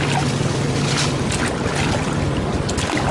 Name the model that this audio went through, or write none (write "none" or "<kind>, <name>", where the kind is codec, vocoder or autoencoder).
none